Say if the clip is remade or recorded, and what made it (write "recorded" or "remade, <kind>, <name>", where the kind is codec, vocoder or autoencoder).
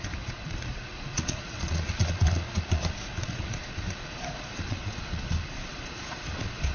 remade, vocoder, Vocos